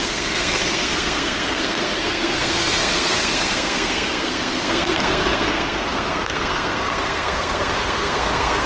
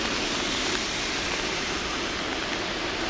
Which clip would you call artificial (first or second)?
first